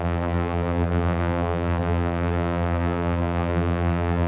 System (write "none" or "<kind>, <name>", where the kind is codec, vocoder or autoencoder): vocoder, BigVGAN v2